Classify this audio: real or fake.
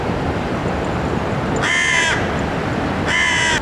real